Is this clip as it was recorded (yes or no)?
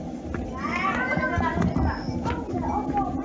yes